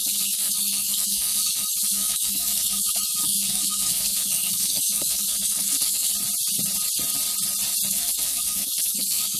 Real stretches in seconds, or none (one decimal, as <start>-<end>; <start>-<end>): 6.1-7.9